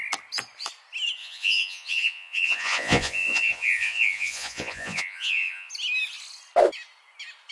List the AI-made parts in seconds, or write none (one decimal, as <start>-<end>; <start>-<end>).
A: 1.2-5.7